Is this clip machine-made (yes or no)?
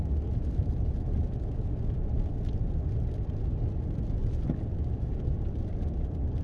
no